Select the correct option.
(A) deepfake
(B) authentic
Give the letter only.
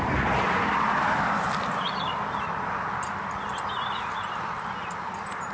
B